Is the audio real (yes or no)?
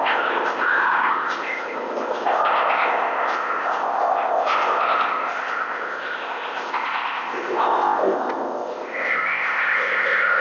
no